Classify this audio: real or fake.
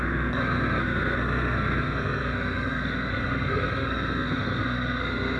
fake